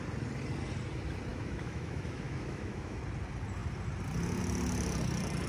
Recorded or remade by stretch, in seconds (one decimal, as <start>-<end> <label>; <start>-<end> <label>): 0.0-1.3 recorded; 1.3-3.0 remade; 3.0-5.5 recorded